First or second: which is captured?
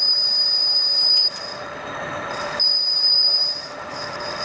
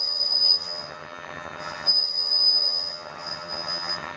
first